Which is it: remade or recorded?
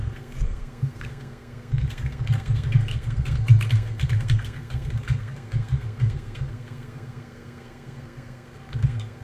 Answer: remade